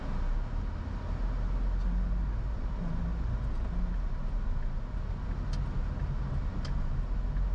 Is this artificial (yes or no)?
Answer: no